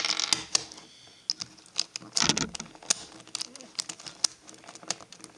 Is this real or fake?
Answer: real